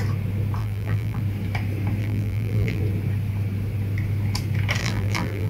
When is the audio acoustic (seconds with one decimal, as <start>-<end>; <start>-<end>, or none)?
0.0-0.6; 1.2-2.0; 2.8-4.8